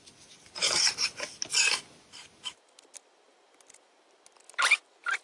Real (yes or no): yes